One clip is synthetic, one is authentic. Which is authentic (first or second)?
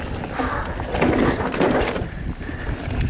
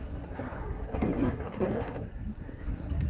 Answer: first